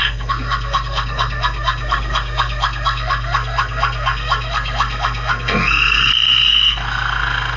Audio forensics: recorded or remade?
remade